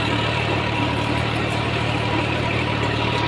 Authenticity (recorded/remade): remade